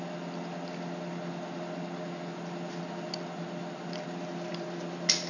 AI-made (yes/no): no